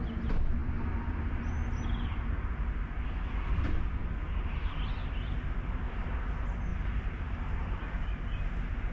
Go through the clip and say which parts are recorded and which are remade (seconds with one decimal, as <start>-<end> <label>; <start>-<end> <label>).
0.0-4.0 recorded; 4.0-4.5 remade; 4.5-5.0 recorded; 5.0-5.7 remade; 5.7-6.7 recorded; 6.7-7.6 remade; 7.6-8.9 recorded